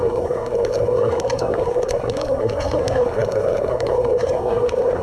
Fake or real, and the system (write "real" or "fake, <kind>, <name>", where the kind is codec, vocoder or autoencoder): fake, codec, SNAC